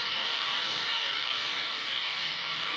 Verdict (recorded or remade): remade